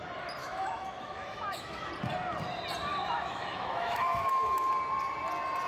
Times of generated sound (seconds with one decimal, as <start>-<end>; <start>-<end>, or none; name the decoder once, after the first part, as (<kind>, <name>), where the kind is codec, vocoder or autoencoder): 0.4-1.9 (autoencoder, DAC-VAE); 2.9-4.7